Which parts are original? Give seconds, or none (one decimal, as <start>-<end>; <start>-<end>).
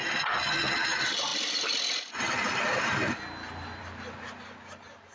0.0-5.1